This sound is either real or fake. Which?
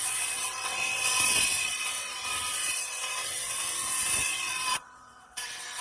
fake